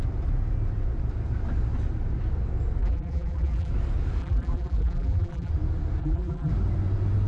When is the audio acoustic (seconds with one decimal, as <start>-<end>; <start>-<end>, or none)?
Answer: 0.0-2.8; 3.7-4.2; 5.5-6.0; 6.5-7.3